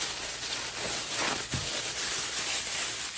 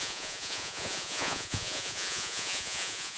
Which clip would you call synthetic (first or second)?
second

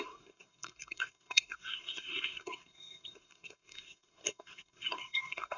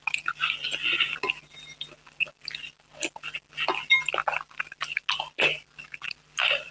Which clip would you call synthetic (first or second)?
first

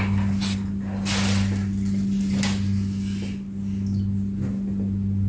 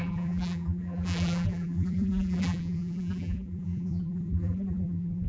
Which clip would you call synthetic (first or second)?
second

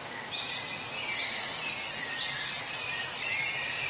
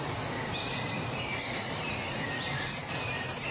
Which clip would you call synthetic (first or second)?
second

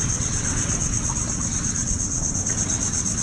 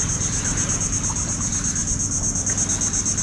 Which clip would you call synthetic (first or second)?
first